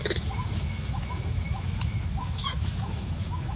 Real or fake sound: fake